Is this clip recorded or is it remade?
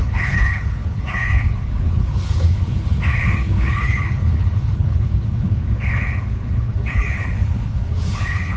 remade